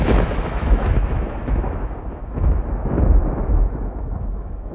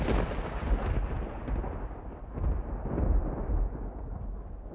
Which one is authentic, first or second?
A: second